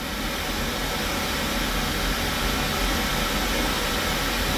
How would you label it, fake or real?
real